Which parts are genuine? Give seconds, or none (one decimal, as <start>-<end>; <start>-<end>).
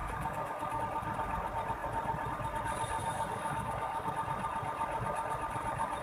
0.8-3.0; 4.1-6.0